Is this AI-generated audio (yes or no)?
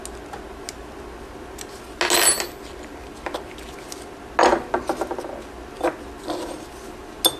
no